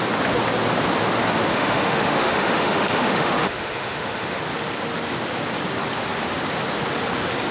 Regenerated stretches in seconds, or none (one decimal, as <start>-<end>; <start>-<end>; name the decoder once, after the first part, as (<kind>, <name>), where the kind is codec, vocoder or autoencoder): 1.5-4.4 (autoencoder, DAC-VAE)